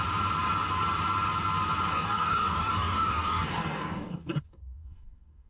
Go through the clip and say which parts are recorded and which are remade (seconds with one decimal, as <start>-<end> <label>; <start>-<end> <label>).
0.0-1.9 recorded; 1.9-5.5 remade